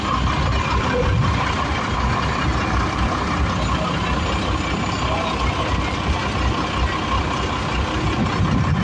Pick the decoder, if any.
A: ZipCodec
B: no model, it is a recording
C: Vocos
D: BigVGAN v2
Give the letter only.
B